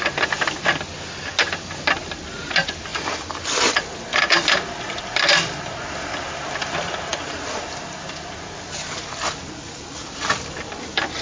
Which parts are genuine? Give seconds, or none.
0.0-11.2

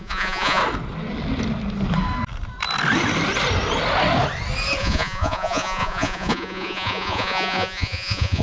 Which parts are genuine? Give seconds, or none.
0.6-4.8

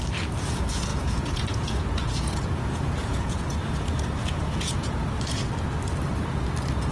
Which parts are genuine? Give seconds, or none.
0.0-0.9; 5.0-6.9

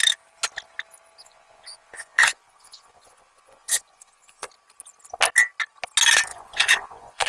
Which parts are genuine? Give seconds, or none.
0.0-1.2; 4.5-6.3

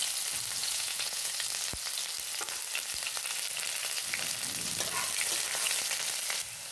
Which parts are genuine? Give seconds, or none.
0.0-0.6; 1.3-6.7

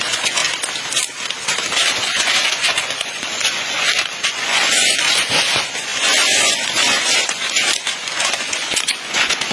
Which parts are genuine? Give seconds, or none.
0.4-2.0

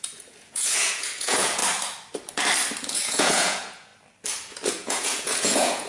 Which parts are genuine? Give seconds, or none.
1.6-2.9; 3.9-4.7